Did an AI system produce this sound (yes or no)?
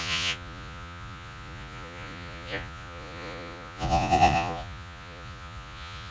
yes